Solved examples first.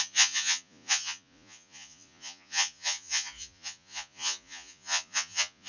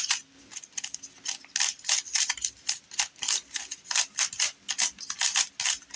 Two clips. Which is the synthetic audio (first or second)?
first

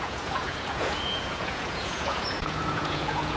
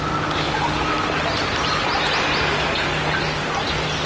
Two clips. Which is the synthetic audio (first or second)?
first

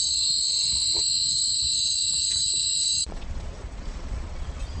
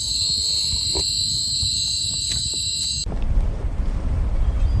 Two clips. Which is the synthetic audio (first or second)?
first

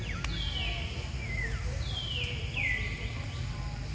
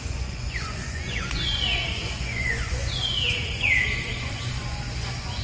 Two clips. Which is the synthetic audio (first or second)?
second